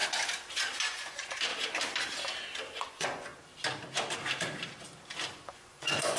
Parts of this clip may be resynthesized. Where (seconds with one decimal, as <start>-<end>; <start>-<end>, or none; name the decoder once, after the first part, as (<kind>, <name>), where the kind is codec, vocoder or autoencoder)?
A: 0.8-1.5 (vocoder, Vocos); 2.8-3.3; 5.3-6.2